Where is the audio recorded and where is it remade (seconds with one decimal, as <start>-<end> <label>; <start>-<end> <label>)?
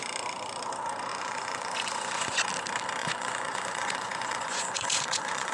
0.0-1.1 recorded; 1.1-2.5 remade; 2.5-3.0 recorded; 3.0-5.5 remade